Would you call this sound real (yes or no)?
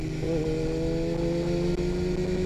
yes